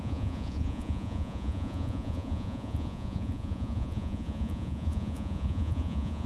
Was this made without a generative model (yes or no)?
no